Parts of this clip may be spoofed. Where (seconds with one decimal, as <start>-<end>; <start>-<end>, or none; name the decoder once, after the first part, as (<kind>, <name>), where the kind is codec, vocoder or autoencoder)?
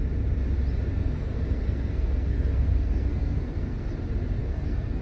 0.9-3.9 (codec, SNAC); 4.4-5.0